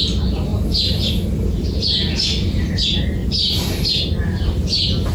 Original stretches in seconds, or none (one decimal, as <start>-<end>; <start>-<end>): 0.0-0.5; 1.1-3.2; 3.8-5.1